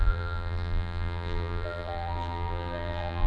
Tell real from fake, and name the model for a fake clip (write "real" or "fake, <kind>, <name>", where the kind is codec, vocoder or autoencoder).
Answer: fake, vocoder, BigVGAN v2